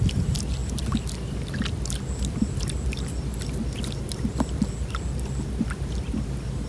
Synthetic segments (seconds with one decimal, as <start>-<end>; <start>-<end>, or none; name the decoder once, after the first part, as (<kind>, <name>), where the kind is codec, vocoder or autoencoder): none